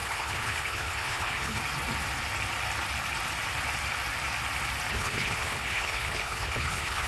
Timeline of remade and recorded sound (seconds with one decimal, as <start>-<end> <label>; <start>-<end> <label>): 0.0-1.6 remade; 1.6-4.9 recorded; 4.9-7.1 remade